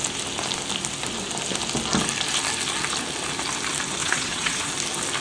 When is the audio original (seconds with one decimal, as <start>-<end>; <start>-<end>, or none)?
0.0-4.0; 4.7-5.2